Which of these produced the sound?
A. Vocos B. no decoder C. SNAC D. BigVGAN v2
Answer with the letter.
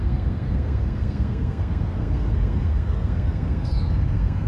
C